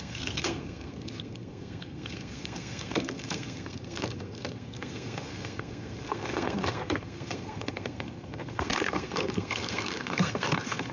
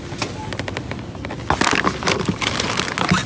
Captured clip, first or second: second